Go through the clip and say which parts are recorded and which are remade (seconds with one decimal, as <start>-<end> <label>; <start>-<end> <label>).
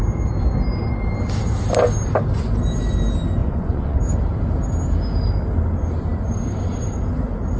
0.0-3.4 recorded; 3.4-4.0 remade; 4.0-7.6 recorded